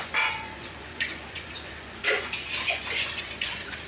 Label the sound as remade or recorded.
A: remade